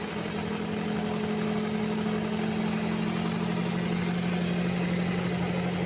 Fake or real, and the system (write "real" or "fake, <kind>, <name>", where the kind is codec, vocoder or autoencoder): real